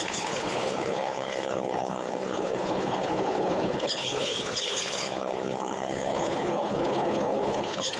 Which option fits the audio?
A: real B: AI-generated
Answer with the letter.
B